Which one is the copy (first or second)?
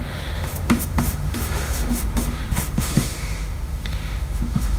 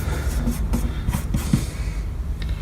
first